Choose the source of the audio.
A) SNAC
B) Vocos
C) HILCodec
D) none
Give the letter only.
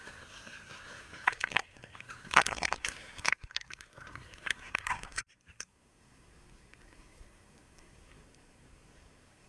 A